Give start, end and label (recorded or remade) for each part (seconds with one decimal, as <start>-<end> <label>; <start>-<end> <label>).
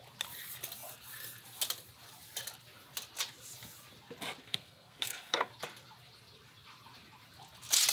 0.0-4.4 recorded; 4.4-5.5 remade; 5.5-7.9 recorded